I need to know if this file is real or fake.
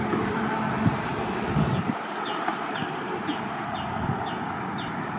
real